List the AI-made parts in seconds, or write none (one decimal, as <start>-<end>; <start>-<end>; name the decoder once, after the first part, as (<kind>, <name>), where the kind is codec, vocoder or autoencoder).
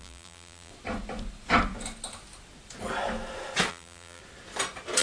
0.0-0.7 (vocoder, BigVGAN v2); 3.7-4.2